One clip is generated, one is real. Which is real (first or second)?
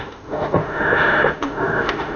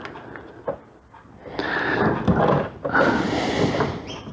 second